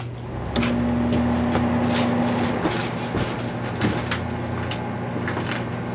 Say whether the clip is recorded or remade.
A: recorded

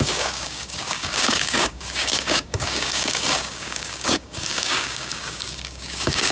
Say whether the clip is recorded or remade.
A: remade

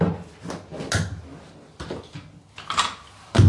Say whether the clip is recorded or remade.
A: recorded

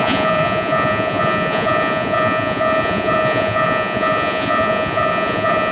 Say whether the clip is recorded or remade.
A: remade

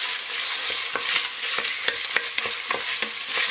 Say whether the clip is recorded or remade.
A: recorded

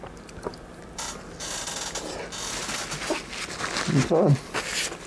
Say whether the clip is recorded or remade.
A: recorded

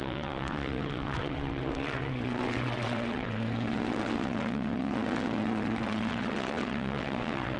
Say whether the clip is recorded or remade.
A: remade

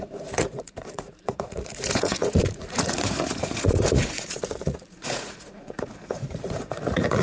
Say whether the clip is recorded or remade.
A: remade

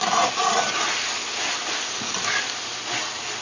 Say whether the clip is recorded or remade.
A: recorded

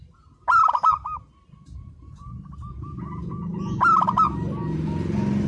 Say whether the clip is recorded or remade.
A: recorded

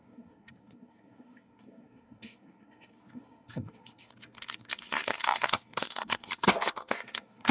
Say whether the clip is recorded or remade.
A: remade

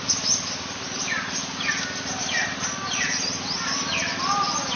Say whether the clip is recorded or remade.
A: recorded